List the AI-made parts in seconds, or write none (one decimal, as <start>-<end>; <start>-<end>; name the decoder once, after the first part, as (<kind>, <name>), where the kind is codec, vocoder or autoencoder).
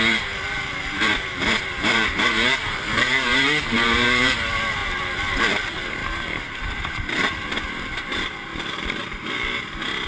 0.0-4.8 (vocoder, BigVGAN v2); 5.4-8.5; 9.0-10.1